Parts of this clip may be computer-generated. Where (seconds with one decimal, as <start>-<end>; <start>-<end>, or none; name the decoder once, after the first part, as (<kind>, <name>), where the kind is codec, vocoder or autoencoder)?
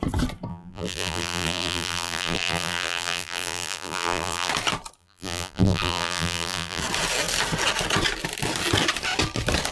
0.5-4.5 (vocoder, BigVGAN v2); 5.0-6.8